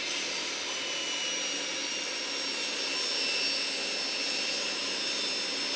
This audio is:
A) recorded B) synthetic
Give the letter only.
A